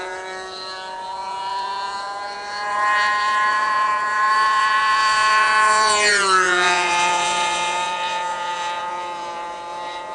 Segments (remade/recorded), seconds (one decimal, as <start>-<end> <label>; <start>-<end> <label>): 0.0-10.1 remade